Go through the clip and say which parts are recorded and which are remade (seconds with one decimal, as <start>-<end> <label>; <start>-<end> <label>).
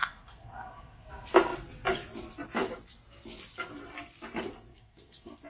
0.0-1.1 remade; 1.1-4.7 recorded; 4.7-5.5 remade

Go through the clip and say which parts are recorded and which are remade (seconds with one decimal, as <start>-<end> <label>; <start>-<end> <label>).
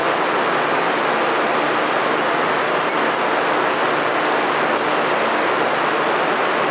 0.0-6.7 recorded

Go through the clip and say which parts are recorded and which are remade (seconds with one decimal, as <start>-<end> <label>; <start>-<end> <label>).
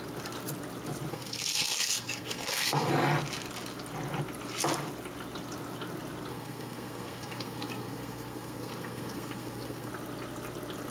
0.0-1.1 recorded; 1.1-2.9 remade; 2.9-6.3 recorded; 6.3-9.9 remade; 9.9-10.9 recorded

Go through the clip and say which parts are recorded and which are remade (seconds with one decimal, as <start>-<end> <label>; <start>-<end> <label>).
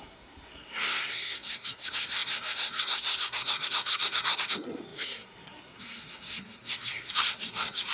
0.0-7.9 remade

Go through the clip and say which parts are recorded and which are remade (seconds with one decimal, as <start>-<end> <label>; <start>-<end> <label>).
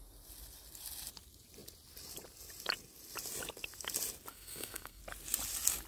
0.0-4.3 recorded; 4.3-5.0 remade; 5.0-5.9 recorded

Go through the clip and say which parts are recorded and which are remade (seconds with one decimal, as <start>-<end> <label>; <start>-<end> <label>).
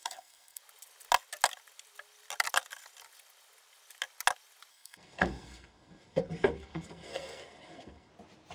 0.0-0.6 remade; 0.6-4.7 recorded; 4.7-8.1 remade; 8.1-8.5 recorded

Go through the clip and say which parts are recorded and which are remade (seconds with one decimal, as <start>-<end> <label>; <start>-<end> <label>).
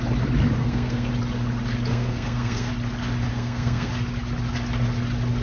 0.0-0.6 recorded; 0.6-1.1 remade; 1.1-1.9 recorded; 1.9-2.7 remade; 2.7-3.3 recorded; 3.3-3.9 remade; 3.9-5.4 recorded